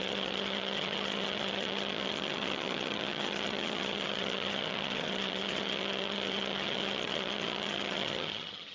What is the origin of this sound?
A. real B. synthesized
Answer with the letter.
B